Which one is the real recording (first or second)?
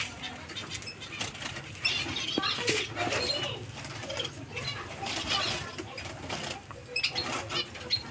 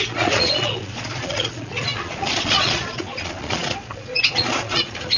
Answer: first